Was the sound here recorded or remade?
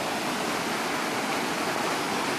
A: recorded